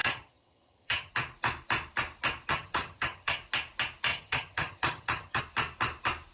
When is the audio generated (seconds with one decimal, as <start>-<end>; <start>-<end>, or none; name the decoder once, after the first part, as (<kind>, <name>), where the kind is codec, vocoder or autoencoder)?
0.0-1.1 (vocoder, HiFi-GAN); 2.5-3.4; 4.1-5.4